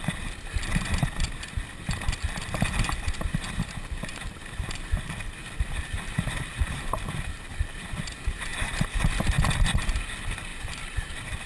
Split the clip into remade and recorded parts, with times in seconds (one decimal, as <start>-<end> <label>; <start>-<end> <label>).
0.0-4.1 recorded; 4.1-7.5 remade; 7.5-10.5 recorded; 10.5-11.5 remade